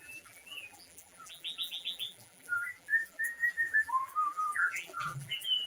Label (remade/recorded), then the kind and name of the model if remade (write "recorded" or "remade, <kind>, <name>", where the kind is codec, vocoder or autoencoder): remade, vocoder, BigVGAN v2